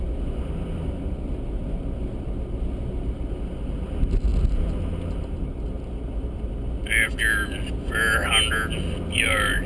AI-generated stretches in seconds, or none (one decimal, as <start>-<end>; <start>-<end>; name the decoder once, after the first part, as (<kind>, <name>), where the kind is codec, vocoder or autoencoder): none